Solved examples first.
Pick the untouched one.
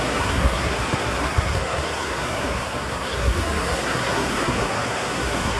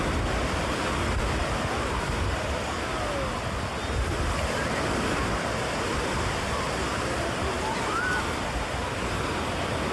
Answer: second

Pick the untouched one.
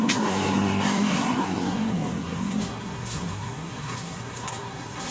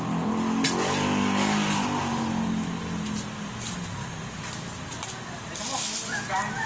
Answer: second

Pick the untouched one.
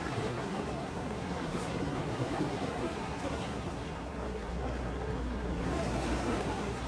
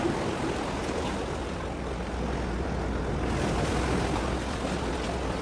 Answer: second